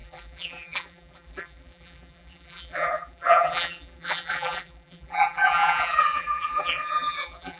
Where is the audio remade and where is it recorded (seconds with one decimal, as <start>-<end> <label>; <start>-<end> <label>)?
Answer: 0.0-7.6 remade